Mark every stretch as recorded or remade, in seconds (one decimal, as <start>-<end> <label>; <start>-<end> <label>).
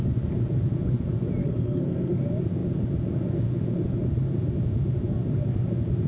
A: 0.0-1.4 recorded; 1.4-2.2 remade; 2.2-6.1 recorded